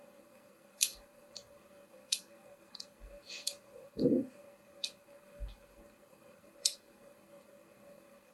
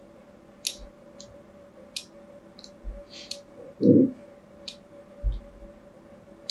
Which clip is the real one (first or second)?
second